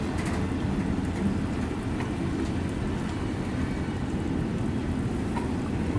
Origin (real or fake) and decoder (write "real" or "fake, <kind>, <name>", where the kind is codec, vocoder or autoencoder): real